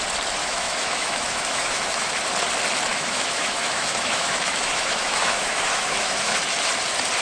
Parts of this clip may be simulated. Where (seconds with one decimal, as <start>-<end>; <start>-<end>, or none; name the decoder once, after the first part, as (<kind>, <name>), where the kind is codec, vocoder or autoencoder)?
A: 0.4-2.1 (autoencoder, DAC-VAE); 2.9-6.4